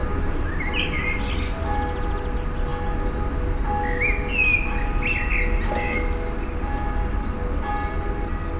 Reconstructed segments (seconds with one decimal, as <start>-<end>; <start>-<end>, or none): 0.0-1.3